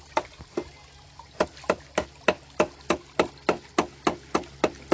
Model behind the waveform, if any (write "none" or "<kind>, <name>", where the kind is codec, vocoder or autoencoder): none